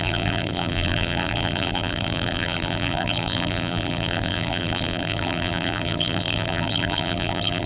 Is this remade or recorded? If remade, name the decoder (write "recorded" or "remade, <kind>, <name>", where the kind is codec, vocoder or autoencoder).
remade, vocoder, BigVGAN v2